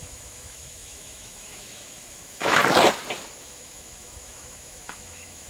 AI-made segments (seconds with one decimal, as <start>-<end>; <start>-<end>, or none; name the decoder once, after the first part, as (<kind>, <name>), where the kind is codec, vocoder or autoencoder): 0.0-2.6 (autoencoder, DAC-VAE); 3.4-5.5